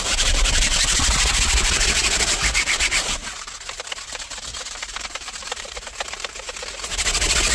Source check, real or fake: fake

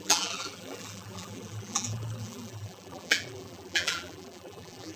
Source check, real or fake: fake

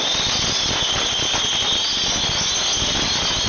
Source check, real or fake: real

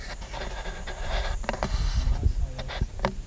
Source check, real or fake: real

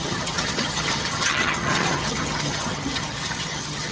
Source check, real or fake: fake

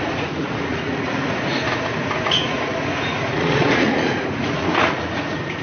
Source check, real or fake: fake